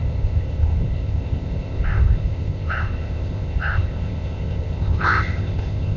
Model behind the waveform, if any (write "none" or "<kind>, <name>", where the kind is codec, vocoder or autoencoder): codec, ZipCodec